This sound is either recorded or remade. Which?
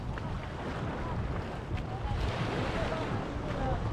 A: recorded